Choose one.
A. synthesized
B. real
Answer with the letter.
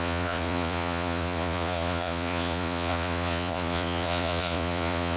A